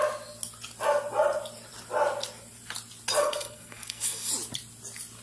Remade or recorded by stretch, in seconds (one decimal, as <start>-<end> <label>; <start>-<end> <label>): 0.0-3.2 recorded; 3.2-4.3 remade; 4.3-5.2 recorded